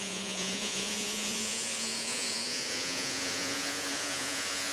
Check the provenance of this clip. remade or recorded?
remade